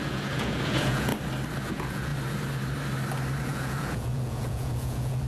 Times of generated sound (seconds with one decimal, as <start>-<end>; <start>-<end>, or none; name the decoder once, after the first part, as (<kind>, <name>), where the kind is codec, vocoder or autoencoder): 0.0-1.1 (vocoder, Vocos); 1.7-2.1; 3.4-5.3